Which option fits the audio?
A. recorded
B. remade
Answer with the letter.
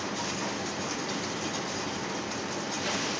A